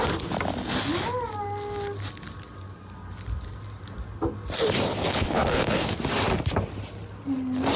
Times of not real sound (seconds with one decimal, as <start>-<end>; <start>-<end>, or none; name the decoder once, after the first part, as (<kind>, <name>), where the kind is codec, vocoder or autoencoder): 4.9-5.9 (codec, HILCodec)